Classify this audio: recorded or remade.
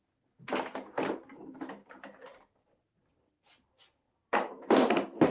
recorded